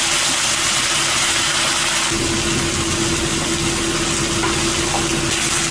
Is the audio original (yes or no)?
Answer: yes